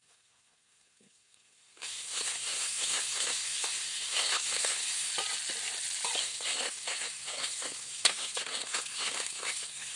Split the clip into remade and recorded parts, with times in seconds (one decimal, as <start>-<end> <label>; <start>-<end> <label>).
0.0-5.1 remade; 5.1-6.2 recorded; 6.2-10.0 remade